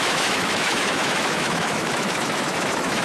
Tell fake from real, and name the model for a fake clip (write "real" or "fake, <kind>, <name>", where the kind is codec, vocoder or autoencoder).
fake, autoencoder, DAC-VAE